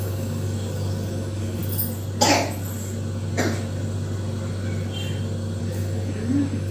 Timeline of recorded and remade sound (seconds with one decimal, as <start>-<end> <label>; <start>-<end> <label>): 0.0-1.6 remade; 1.6-5.6 recorded; 5.6-6.7 remade